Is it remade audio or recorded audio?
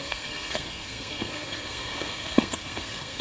remade